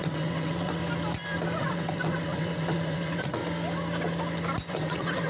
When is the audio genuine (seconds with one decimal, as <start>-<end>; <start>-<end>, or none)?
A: 0.8-1.6; 3.4-4.7